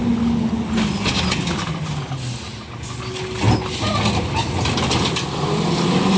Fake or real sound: real